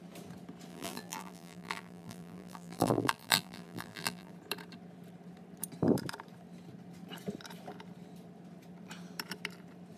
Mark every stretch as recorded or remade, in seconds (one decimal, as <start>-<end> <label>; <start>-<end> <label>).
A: 0.0-0.7 recorded; 0.7-4.3 remade; 4.3-10.0 recorded